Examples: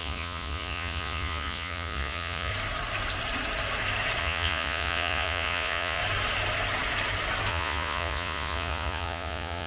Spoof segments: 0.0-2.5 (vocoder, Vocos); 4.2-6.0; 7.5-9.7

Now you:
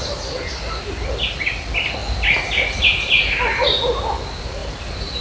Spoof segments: none

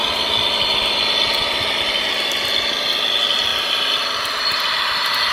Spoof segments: none

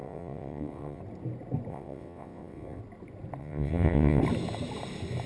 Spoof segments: 0.0-1.0 (vocoder, WaveNeXt); 1.7-2.8; 3.4-4.2

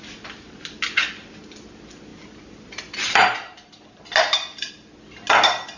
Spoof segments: none

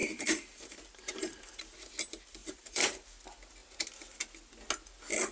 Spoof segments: 0.0-1.6 (vocoder, BigVGAN v2); 2.4-3.0